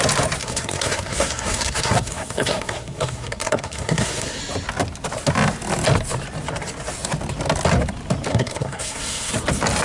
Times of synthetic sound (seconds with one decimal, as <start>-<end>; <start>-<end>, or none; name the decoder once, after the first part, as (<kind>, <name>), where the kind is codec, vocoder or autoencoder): 0.4-4.4 (codec, SNAC); 8.3-9.3